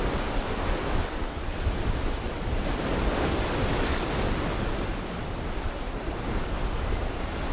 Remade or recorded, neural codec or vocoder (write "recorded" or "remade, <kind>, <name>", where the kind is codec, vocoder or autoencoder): recorded